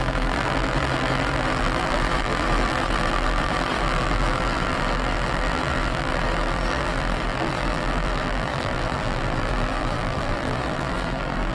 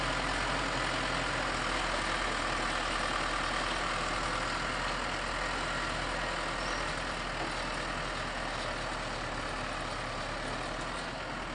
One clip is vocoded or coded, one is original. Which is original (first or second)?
second